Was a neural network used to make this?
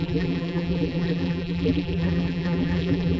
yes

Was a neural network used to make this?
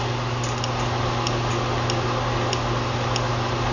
no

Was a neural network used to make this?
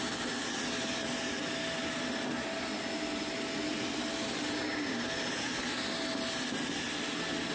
no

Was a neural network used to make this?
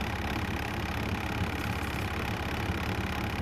yes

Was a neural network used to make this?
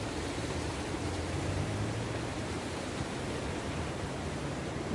yes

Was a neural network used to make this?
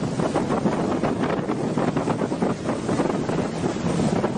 no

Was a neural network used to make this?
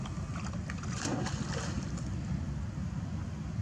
no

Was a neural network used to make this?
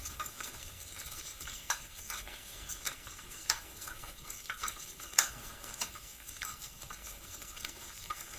yes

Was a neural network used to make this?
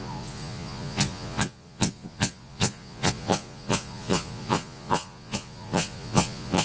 yes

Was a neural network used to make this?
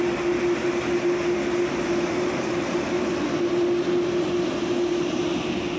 no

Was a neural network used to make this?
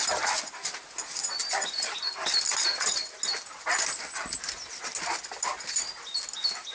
no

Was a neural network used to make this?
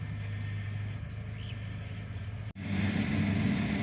no